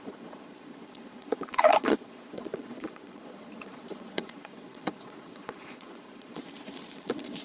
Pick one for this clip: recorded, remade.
remade